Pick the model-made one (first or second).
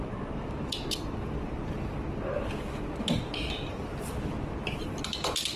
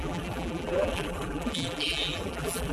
second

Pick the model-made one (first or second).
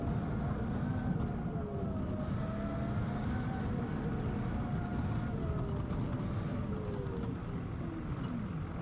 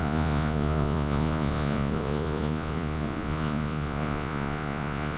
second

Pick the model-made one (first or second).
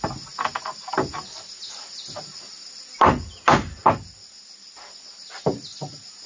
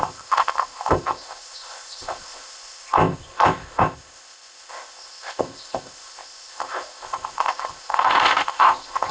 second